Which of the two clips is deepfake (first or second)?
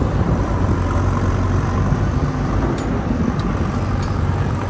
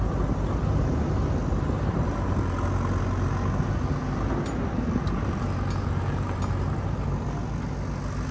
first